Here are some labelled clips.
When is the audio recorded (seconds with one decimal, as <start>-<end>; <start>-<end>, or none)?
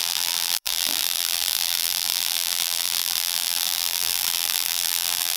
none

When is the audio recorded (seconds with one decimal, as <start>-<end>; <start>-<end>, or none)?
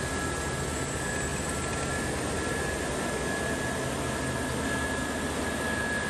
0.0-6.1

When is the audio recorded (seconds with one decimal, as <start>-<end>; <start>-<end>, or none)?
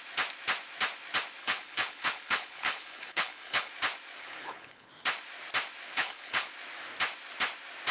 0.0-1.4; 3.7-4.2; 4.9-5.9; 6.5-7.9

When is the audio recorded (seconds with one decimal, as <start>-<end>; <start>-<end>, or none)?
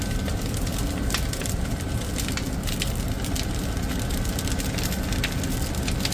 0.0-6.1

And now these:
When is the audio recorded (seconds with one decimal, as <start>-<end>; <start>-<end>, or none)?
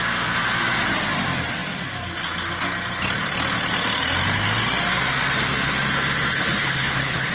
0.0-6.3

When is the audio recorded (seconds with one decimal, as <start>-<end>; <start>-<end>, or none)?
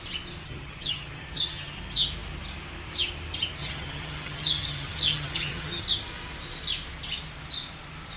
0.0-0.4; 1.8-3.6; 5.8-8.2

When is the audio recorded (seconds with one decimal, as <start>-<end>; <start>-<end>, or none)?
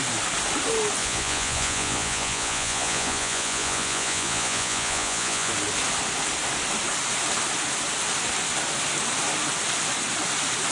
0.0-1.0; 5.5-10.7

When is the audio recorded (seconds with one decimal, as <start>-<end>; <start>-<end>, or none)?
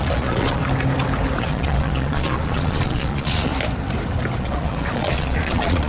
0.6-1.4; 3.5-4.4